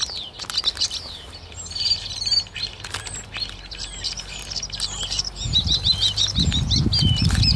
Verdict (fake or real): real